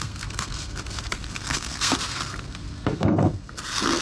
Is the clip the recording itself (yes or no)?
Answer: no